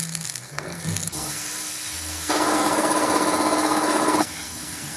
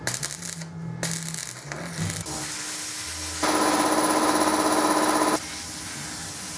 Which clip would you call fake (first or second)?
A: first